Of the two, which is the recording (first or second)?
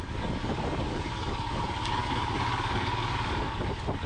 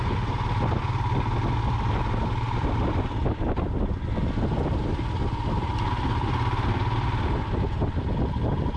second